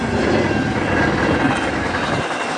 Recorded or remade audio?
recorded